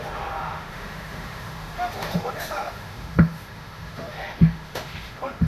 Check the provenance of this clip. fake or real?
fake